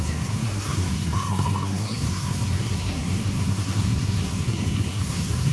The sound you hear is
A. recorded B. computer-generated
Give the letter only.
B